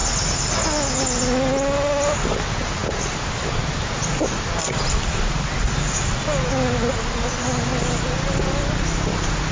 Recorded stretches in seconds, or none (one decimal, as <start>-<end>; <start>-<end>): 0.0-9.5